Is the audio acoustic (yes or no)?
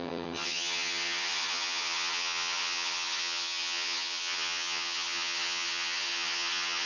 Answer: no